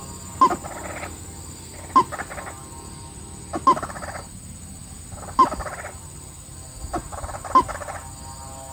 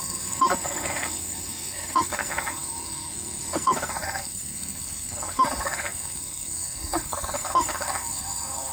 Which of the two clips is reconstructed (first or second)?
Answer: second